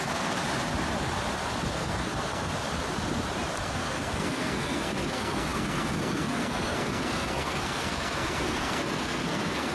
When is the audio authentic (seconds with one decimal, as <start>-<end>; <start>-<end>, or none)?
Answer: 0.4-1.7; 2.5-3.6